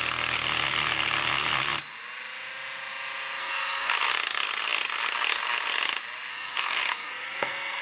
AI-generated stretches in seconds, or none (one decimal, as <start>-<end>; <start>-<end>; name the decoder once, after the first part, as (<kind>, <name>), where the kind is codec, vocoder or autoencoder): 3.4-3.9 (codec, SNAC); 6.3-7.8